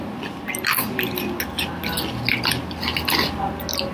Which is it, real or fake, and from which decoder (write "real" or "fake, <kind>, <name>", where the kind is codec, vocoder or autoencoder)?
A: real